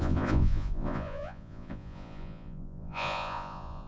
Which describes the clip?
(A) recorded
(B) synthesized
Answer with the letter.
B